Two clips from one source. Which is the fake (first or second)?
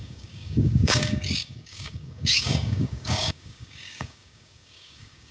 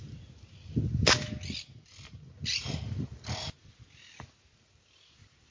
first